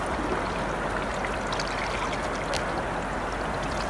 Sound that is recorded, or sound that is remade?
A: recorded